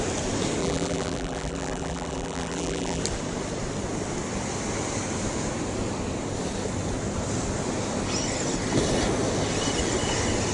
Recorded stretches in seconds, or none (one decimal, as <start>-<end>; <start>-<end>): 0.0-0.6; 3.0-10.5